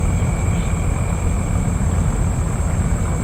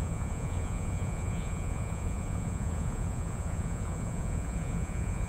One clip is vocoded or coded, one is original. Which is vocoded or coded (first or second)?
second